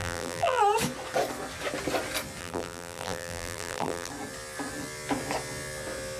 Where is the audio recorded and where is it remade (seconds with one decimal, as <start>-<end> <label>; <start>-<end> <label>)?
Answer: 0.0-0.6 remade; 0.6-2.4 recorded; 2.4-4.1 remade; 4.1-6.2 recorded